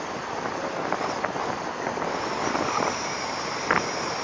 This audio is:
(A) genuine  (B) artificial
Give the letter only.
A